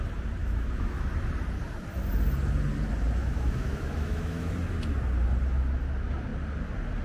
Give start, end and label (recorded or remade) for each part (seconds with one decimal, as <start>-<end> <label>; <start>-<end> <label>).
0.0-0.4 recorded; 0.4-1.1 remade; 1.1-3.2 recorded; 3.2-4.5 remade; 4.5-7.0 recorded